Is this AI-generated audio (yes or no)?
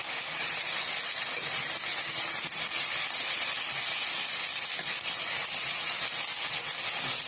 no